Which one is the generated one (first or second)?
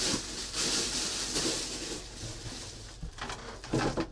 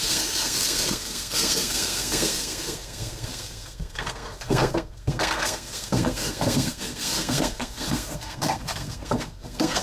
second